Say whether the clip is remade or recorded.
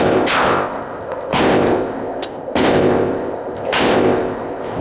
remade